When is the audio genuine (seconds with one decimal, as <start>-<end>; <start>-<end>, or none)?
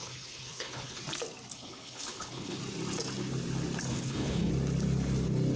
1.0-1.5; 2.6-3.9; 4.5-5.6